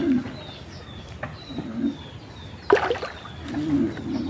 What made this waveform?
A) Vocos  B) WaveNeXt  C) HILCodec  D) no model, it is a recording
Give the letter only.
D